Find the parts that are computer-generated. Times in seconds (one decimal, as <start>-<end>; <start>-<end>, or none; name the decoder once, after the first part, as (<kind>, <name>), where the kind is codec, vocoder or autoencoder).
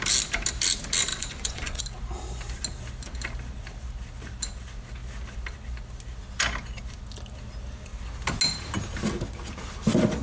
1.1-1.8 (vocoder, Vocos)